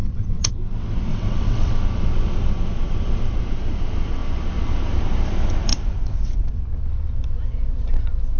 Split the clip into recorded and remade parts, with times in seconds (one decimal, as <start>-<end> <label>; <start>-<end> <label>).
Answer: 0.0-0.5 remade; 0.5-1.1 recorded; 1.1-1.7 remade; 1.7-5.7 recorded; 5.7-6.6 remade; 6.6-8.4 recorded